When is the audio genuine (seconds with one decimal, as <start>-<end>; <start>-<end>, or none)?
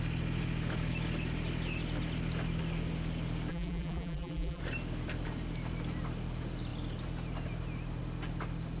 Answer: 0.0-3.5; 4.6-8.8